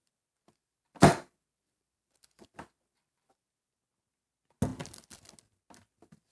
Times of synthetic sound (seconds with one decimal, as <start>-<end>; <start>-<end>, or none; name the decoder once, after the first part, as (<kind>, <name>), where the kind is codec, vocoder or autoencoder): 0.0-3.8 (vocoder, BigVGAN v2)